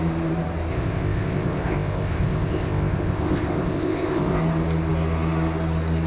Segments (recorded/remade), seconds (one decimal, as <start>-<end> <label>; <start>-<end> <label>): 0.0-0.7 recorded; 0.7-4.4 remade; 4.4-6.1 recorded